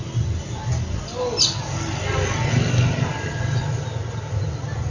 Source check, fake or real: real